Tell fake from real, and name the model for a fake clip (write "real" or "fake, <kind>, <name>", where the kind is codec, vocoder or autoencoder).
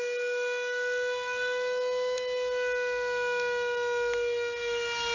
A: real